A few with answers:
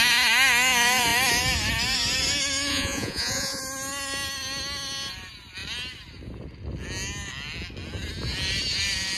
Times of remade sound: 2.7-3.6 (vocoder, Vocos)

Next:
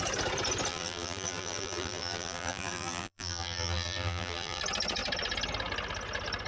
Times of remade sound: 0.7-4.6 (vocoder, BigVGAN v2)

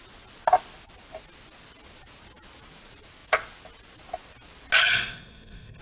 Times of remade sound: 4.8-5.8 (codec, SNAC)

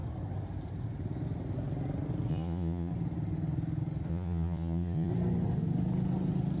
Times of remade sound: 2.3-2.9 (vocoder, Vocos); 4.1-5.1

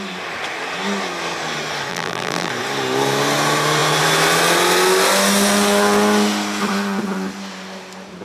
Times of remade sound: 1.9-2.5 (vocoder, BigVGAN v2)

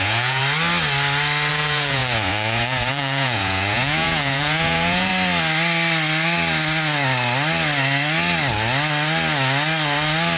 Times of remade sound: 0.0-0.4 (vocoder, Vocos); 1.5-5.1

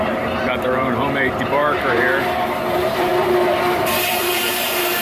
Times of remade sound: 0.0-3.1 (vocoder, BigVGAN v2); 3.8-5.0

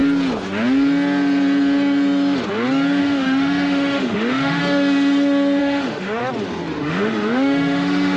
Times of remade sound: 3.0-4.6 (autoencoder, DAC-VAE); 5.6-6.2; 6.8-8.2